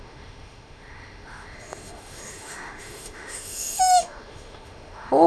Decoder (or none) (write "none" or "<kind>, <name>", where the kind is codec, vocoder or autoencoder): autoencoder, DAC-VAE